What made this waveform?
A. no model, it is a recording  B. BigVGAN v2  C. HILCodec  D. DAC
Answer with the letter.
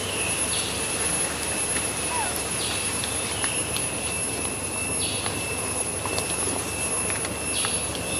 A